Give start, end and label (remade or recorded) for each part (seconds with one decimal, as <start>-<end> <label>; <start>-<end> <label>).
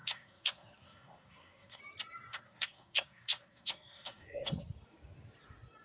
0.0-1.8 remade; 1.8-2.3 recorded; 2.3-4.6 remade; 4.6-5.8 recorded